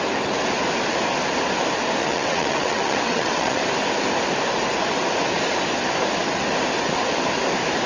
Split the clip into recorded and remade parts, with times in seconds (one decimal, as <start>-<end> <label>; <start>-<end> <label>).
0.0-2.0 recorded; 2.0-3.6 remade; 3.6-7.9 recorded